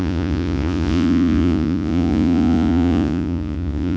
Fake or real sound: fake